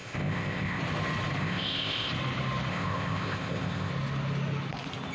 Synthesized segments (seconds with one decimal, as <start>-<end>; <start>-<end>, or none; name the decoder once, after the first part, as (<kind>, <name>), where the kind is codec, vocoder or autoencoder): 0.0-0.8 (codec, ZipCodec); 1.4-2.1; 2.7-3.9